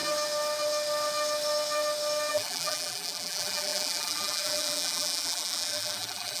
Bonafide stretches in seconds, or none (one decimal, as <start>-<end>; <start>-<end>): 0.0-2.3